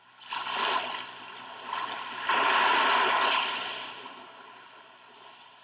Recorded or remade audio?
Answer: recorded